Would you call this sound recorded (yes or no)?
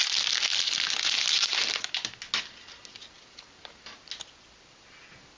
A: yes